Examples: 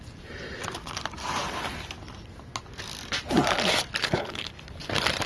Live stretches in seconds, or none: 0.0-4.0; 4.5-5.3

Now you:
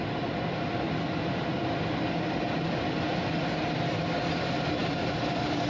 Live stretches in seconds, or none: 0.0-5.7